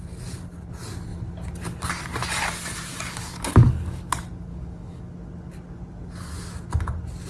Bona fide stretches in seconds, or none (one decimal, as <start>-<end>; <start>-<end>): 0.0-2.9; 4.1-4.5; 5.0-7.3